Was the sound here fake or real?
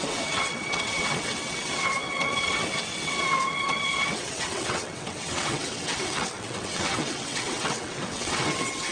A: fake